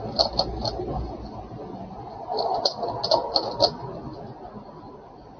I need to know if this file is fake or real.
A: real